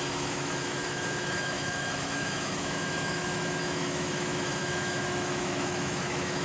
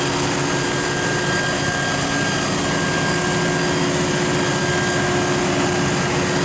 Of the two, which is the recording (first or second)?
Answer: second